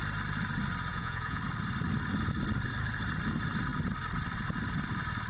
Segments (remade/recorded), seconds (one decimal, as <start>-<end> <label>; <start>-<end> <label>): 0.0-0.9 recorded; 0.9-1.4 remade; 1.4-5.3 recorded

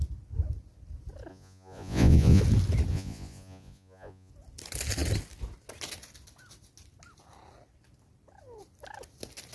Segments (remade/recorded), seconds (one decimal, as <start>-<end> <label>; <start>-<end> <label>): 0.0-1.3 recorded; 1.3-2.4 remade; 2.4-2.9 recorded; 2.9-4.3 remade; 4.3-9.5 recorded

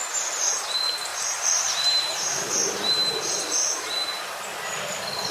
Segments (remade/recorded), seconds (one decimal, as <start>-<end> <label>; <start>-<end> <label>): 0.0-1.1 recorded; 1.1-3.2 remade; 3.2-3.6 recorded; 3.6-4.4 remade; 4.4-5.3 recorded

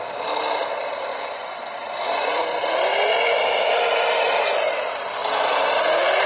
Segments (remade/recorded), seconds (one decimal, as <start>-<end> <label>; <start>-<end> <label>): 0.0-1.1 recorded; 1.1-2.4 remade; 2.4-6.3 recorded

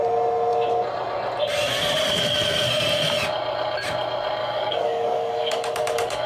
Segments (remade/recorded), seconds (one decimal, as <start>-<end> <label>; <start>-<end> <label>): 0.0-4.4 recorded; 4.4-6.3 remade